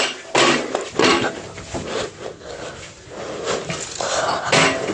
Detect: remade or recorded recorded